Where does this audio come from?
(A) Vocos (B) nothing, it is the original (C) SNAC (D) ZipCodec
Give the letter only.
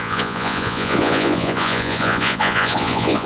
A